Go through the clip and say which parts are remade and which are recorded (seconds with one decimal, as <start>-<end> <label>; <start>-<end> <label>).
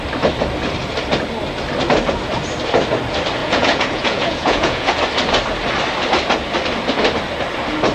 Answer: 0.0-3.4 recorded; 3.4-5.0 remade; 5.0-7.9 recorded